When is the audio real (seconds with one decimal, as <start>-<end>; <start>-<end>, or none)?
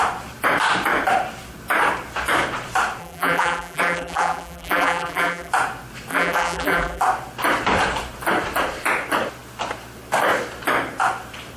0.0-3.0; 5.5-6.1; 7.0-11.6